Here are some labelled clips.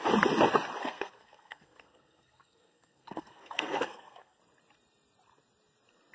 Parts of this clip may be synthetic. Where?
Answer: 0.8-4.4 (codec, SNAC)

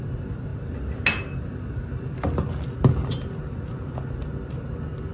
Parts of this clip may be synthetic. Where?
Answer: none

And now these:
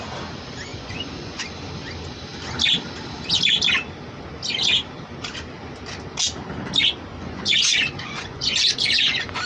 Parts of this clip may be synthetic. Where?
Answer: 0.7-1.5 (vocoder, Vocos); 7.1-9.5